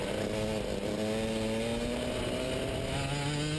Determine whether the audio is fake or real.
real